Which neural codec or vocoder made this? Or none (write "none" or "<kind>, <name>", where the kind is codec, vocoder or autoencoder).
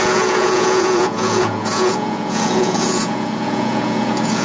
vocoder, Vocos